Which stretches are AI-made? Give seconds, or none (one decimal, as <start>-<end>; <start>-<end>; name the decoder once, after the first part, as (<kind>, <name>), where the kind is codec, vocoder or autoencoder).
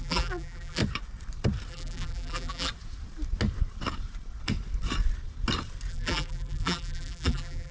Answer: 0.0-0.8 (vocoder, BigVGAN v2); 1.7-2.7; 5.9-7.7